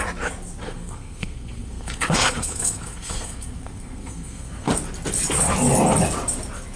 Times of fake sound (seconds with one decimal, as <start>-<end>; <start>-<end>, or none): 0.6-4.7